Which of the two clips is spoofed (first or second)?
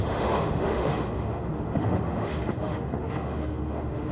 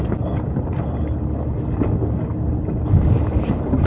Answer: first